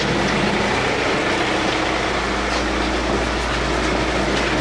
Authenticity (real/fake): real